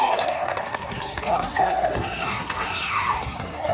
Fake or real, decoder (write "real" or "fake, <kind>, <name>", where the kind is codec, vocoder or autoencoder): fake, codec, SNAC